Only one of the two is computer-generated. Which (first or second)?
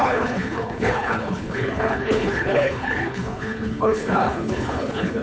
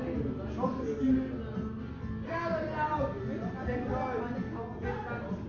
first